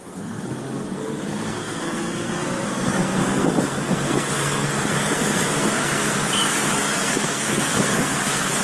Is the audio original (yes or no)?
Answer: no